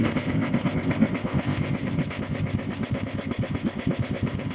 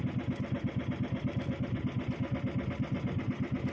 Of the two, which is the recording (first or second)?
second